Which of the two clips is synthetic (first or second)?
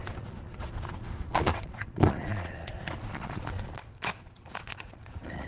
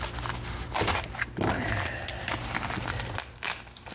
first